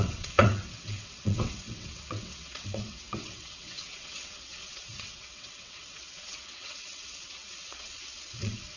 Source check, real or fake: fake